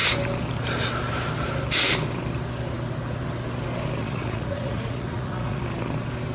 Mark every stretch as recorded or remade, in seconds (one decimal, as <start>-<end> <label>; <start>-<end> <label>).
0.0-4.0 recorded; 4.0-5.6 remade; 5.6-6.3 recorded